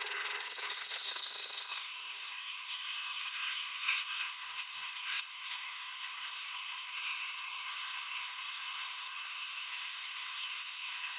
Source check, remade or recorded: remade